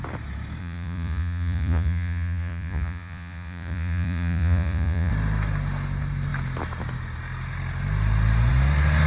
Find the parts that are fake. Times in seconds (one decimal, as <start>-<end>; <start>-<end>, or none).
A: 0.6-5.1